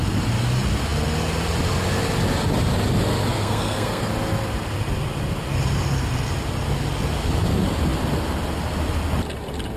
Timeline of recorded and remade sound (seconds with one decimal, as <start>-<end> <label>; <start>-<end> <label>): 0.0-3.3 recorded; 3.3-4.1 remade; 4.1-9.8 recorded